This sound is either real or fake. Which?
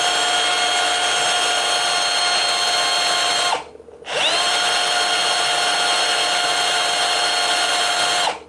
real